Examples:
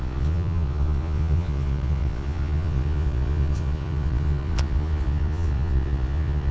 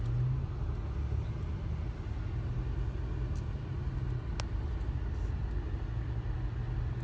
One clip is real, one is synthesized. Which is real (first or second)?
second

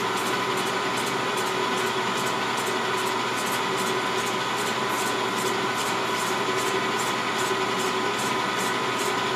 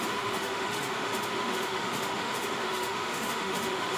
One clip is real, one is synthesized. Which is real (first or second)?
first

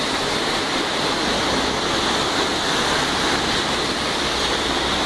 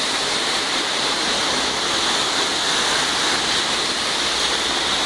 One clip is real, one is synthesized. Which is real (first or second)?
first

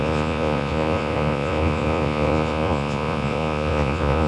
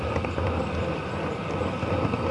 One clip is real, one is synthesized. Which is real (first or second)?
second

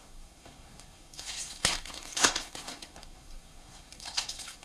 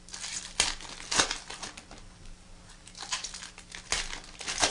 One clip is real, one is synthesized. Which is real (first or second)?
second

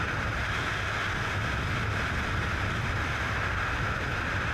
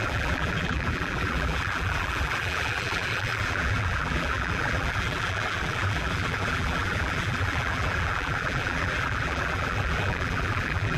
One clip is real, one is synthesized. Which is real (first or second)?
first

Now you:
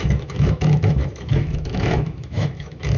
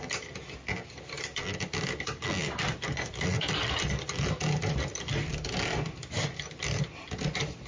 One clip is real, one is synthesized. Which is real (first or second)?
second